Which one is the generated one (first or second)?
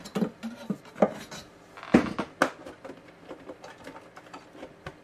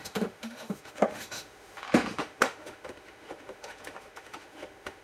second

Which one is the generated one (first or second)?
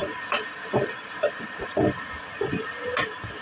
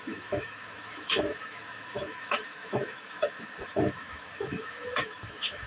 second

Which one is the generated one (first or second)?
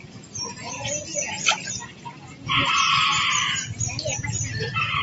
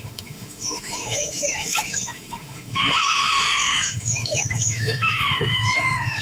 second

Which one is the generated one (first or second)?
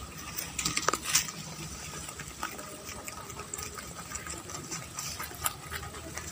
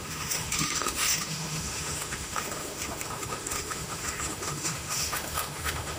second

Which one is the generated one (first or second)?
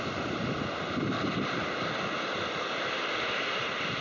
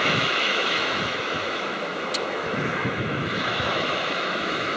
second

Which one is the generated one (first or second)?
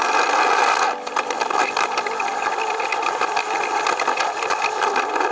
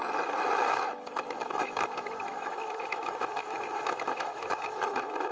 second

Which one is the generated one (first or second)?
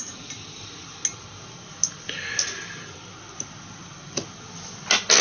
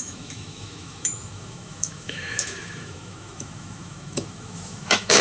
second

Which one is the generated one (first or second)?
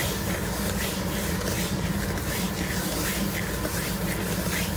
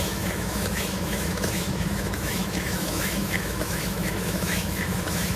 second